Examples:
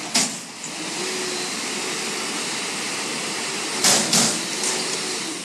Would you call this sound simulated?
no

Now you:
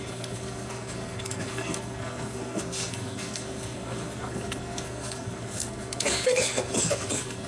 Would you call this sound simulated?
yes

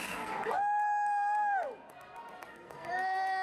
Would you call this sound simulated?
yes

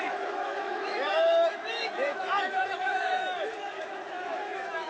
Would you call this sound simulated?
yes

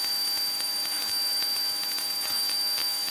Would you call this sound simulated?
yes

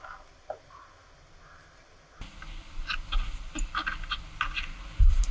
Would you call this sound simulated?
no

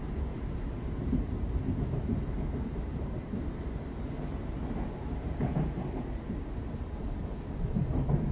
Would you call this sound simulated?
yes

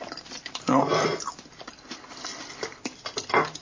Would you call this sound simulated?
no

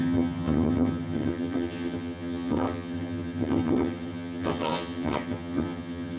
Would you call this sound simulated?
yes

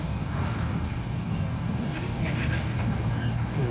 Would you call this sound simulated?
yes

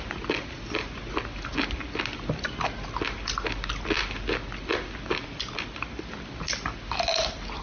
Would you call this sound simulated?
no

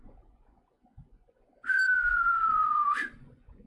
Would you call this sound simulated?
yes